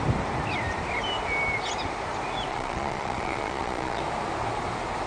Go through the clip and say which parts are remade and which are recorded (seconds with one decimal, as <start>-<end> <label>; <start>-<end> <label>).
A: 0.0-2.5 recorded; 2.5-4.0 remade; 4.0-5.1 recorded